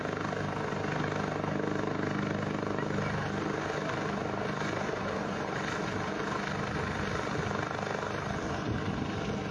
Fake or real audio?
real